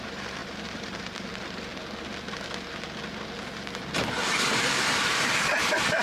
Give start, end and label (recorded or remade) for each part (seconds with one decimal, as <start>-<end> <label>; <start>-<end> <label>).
0.0-1.7 remade; 1.7-5.3 recorded; 5.3-6.0 remade